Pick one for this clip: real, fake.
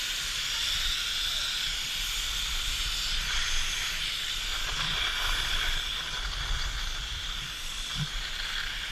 real